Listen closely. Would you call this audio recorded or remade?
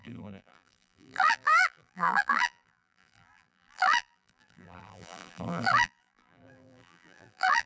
remade